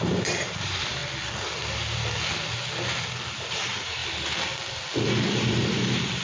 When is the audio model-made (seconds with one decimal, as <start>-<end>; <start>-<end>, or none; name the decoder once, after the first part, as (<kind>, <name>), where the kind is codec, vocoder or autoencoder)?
0.0-1.0 (vocoder, BigVGAN v2); 3.3-4.0; 5.1-6.2